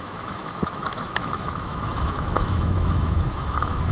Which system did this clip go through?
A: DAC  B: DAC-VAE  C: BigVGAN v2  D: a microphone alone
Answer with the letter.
B